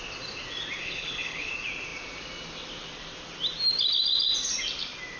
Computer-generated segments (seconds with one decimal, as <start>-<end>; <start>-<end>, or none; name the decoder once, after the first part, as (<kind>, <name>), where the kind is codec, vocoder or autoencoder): 0.8-1.5 (codec, HILCodec)